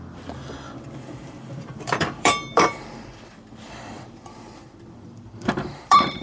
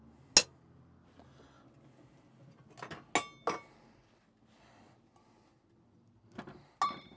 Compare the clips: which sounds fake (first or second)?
first